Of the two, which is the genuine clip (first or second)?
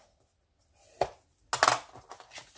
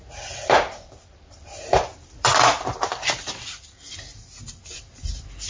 first